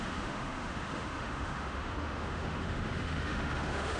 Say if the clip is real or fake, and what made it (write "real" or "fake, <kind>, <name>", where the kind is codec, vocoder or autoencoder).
fake, autoencoder, DAC-VAE